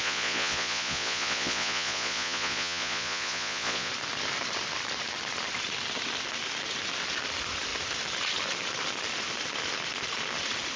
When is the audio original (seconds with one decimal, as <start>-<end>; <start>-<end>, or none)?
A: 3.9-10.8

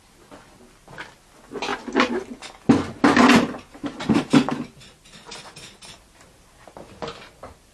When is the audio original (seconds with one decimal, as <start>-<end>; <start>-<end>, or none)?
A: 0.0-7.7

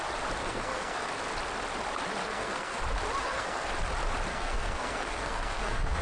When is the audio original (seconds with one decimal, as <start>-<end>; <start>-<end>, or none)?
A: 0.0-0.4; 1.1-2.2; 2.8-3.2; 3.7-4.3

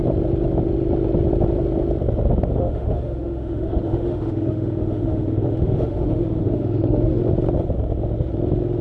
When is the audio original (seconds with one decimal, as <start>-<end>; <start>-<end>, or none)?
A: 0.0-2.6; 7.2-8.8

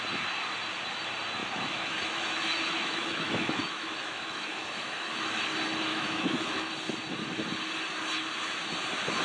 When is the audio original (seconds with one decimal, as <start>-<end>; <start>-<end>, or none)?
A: 0.0-1.4; 5.3-5.9; 6.7-9.2

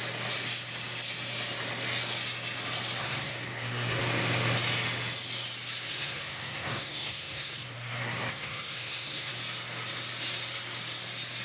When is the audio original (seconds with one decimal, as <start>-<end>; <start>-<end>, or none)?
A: 0.0-3.0; 4.0-5.9; 9.3-11.4

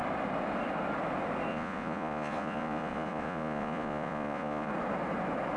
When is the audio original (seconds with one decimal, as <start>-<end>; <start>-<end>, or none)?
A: 0.0-1.5; 4.7-5.6

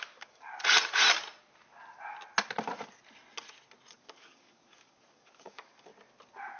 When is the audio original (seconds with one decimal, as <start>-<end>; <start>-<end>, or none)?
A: 0.5-3.9; 5.9-6.6